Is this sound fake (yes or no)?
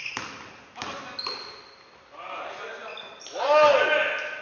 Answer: no